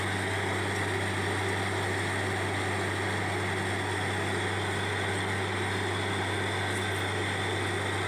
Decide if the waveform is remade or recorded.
recorded